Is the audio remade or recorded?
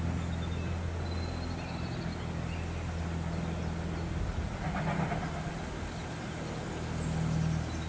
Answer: recorded